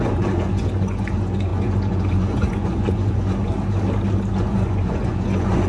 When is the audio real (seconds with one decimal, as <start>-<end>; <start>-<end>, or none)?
3.5-4.3